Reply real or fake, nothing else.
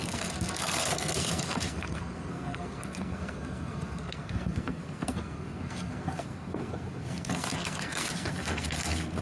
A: fake